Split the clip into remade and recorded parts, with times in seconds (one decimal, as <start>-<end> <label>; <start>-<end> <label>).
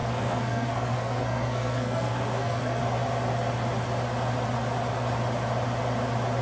0.0-2.8 remade; 2.8-6.4 recorded